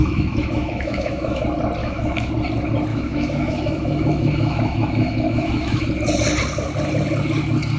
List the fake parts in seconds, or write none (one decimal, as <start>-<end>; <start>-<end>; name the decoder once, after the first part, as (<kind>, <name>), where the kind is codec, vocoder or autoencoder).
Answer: 0.0-1.4 (autoencoder, DAC-VAE); 1.8-2.3; 2.9-5.8